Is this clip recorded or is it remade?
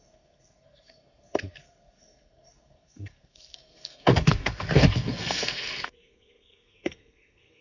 remade